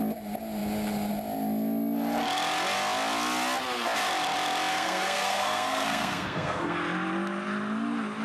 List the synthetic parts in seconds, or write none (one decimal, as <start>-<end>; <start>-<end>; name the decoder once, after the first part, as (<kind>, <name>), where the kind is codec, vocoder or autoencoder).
4.7-6.8 (codec, SNAC)